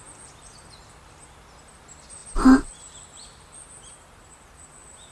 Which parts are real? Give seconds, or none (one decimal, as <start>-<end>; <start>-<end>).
0.0-5.1

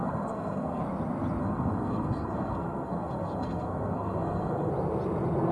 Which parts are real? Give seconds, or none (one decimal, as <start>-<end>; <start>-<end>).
0.8-1.4; 4.7-5.5

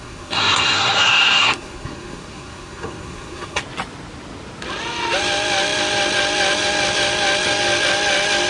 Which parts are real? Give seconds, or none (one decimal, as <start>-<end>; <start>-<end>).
3.6-8.5

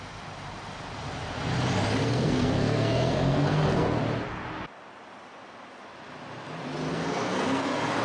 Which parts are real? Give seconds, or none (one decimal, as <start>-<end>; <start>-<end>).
0.0-2.0; 4.0-6.9